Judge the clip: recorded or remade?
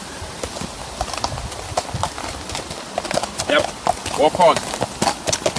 recorded